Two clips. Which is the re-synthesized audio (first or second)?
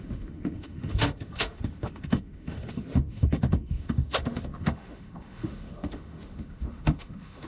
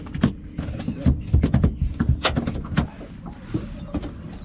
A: first